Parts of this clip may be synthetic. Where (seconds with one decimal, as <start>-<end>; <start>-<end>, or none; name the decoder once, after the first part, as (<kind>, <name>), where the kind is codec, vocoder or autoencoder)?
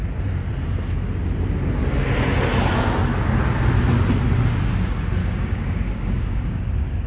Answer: 5.2-6.6 (codec, DAC)